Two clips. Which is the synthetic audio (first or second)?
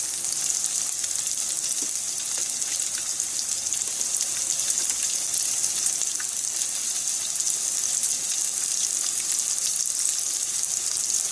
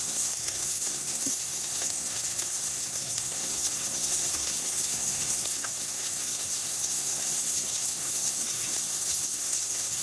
second